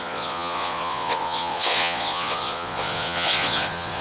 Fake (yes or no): yes